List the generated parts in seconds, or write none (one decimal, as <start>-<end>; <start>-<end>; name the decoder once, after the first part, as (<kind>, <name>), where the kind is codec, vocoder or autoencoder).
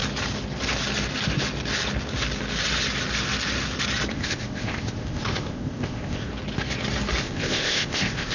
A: 4.1-6.3 (codec, ZipCodec); 7.2-8.3